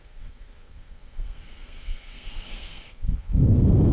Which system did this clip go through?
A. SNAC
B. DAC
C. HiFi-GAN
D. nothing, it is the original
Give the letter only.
A